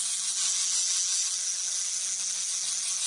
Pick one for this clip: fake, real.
real